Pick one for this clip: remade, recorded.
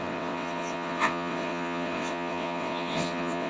remade